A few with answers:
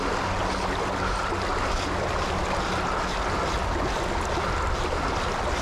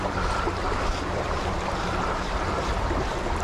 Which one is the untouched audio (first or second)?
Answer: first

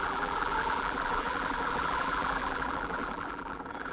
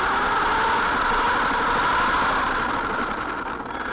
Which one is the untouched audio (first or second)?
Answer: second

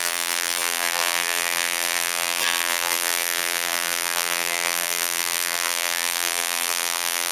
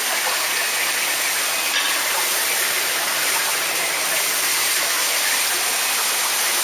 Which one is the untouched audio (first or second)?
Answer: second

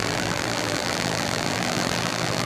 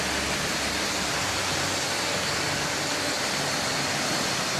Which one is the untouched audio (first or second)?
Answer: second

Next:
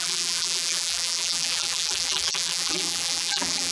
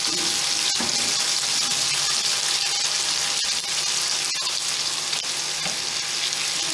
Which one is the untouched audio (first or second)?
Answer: second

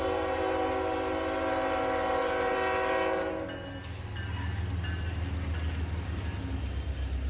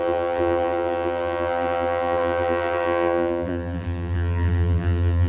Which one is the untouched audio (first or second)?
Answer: first